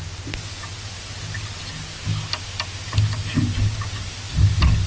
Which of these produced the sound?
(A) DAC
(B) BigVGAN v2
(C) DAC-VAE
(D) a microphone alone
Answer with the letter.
D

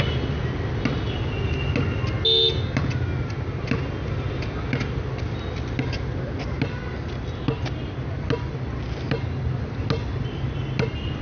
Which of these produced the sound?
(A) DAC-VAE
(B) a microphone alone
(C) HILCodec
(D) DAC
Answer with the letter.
B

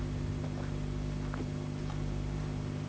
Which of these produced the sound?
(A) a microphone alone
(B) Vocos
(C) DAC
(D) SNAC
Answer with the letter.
A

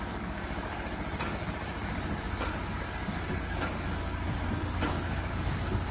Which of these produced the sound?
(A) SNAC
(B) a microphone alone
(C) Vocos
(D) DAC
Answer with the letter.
D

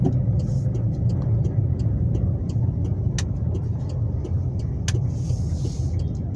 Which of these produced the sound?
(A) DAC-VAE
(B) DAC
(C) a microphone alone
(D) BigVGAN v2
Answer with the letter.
C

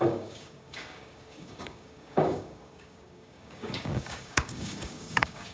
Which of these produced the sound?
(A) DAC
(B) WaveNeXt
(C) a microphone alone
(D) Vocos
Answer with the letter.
A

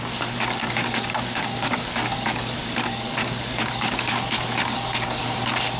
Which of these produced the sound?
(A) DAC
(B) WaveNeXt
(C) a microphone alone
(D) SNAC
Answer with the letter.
A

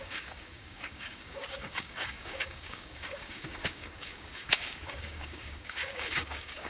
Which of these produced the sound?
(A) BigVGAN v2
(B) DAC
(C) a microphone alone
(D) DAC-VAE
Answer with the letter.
B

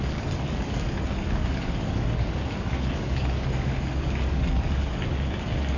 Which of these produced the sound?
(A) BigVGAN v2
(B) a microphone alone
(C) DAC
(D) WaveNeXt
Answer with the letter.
C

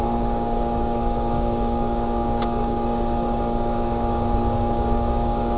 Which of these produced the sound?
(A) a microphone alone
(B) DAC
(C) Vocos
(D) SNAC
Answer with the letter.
B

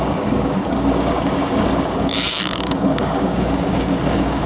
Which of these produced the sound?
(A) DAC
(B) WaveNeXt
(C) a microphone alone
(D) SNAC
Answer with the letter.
A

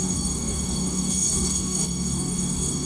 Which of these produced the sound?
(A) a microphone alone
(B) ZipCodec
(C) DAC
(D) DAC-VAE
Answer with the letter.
C